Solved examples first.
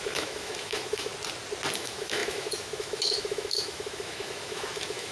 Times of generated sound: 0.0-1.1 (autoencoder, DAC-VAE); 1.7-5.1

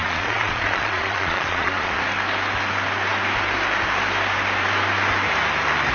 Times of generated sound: 0.0-2.0 (vocoder, Vocos)

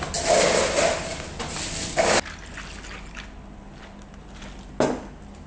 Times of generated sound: none